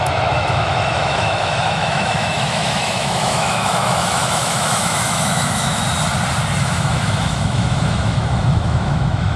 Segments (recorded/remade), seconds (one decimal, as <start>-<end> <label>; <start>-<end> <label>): 0.0-5.8 remade; 5.8-6.6 recorded; 6.6-9.4 remade